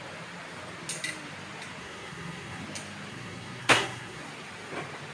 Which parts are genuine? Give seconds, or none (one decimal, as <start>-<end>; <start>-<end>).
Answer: 0.0-1.8; 2.6-3.1; 4.2-5.1